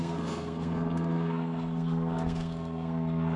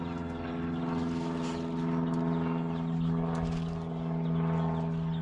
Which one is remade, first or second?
first